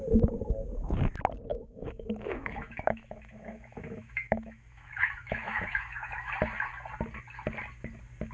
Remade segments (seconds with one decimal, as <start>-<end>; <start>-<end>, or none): 1.5-6.3